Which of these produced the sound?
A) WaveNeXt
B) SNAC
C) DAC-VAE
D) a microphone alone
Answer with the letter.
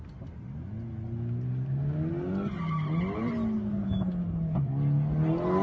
D